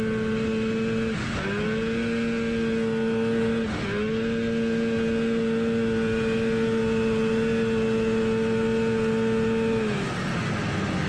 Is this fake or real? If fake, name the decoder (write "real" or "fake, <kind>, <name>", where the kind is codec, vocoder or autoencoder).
real